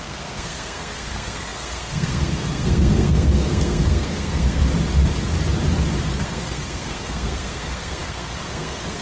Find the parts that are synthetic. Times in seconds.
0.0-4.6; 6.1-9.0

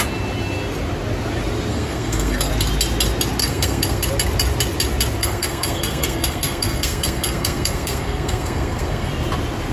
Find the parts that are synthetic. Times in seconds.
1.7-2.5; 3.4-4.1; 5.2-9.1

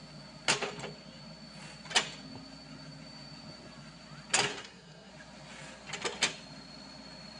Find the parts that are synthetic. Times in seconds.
4.5-5.1